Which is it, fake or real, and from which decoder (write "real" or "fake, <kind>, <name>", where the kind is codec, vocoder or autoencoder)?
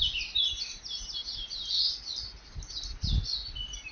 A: real